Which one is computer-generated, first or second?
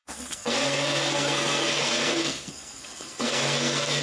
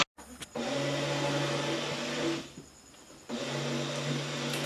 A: first